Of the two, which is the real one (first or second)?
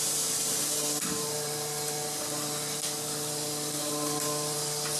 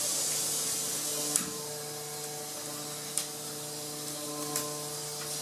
second